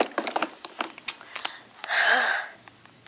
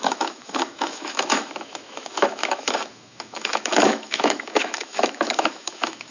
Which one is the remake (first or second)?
second